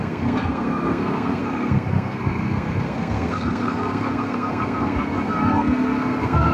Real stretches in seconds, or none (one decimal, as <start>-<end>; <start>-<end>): none